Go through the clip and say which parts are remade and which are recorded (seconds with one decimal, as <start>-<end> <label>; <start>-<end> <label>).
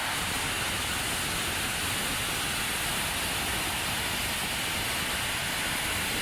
0.0-6.2 recorded